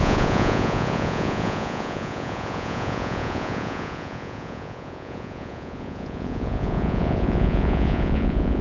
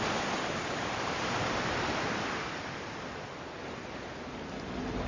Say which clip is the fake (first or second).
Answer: first